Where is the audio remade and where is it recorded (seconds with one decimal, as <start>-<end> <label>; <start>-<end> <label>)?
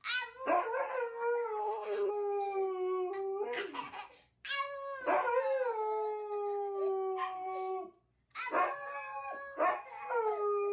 0.0-1.6 recorded; 1.6-2.1 remade; 2.1-10.7 recorded